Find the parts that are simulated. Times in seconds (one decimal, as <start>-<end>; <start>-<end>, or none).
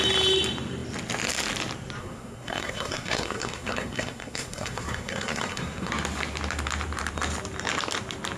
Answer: 2.0-5.9